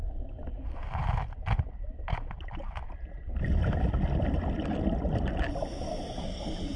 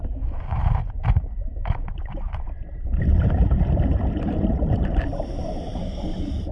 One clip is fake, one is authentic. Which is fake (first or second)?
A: second